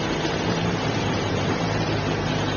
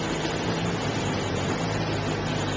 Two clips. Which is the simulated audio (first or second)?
first